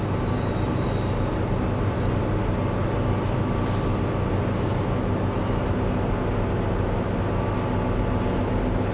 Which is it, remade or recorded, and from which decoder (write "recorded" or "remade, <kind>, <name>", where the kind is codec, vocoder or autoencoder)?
recorded